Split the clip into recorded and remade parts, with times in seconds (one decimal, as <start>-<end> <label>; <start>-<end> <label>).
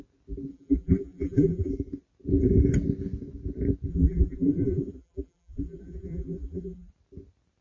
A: 0.0-0.5 recorded; 0.5-1.7 remade; 1.7-3.9 recorded; 3.9-6.9 remade; 6.9-7.6 recorded